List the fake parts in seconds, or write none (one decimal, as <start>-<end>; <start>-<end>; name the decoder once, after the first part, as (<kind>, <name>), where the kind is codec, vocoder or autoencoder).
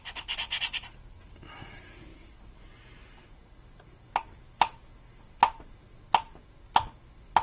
none